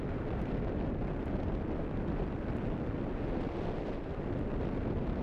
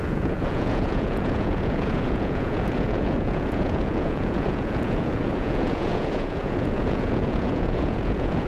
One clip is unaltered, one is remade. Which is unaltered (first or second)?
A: first